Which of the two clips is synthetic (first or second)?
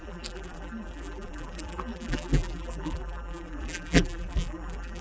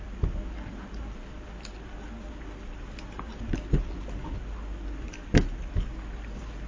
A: first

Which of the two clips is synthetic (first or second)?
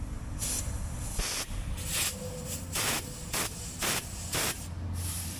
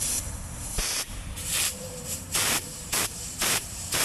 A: second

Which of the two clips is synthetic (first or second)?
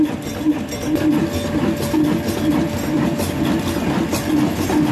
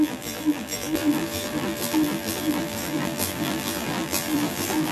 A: second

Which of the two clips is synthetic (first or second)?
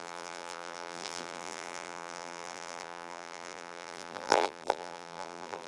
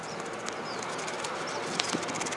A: first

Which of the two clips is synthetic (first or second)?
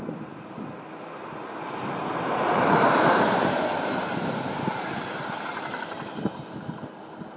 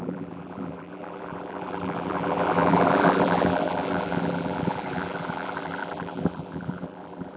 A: second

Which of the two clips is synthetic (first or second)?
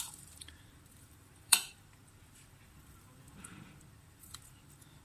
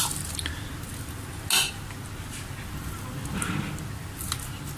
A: first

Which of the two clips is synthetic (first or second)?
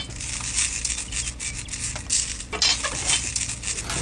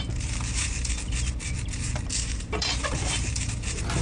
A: second